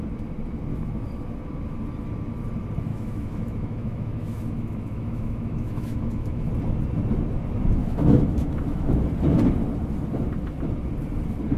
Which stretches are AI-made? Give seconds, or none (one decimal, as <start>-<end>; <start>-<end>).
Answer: 2.9-6.5; 7.8-9.0